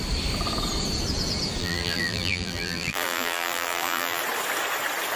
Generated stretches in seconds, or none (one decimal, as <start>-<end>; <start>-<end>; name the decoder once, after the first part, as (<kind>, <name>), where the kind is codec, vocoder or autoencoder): 1.6-4.2 (vocoder, BigVGAN v2)